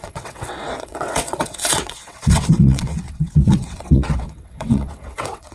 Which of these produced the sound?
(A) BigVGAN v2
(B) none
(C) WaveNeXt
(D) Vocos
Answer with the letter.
C